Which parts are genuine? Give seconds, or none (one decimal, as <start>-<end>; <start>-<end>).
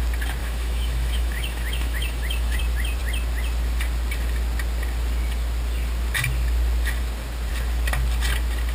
0.0-0.4; 2.6-8.7